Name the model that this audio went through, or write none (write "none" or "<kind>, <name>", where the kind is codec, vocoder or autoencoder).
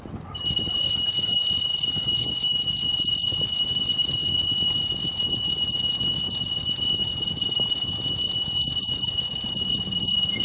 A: none